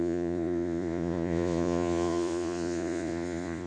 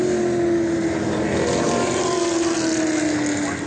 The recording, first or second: second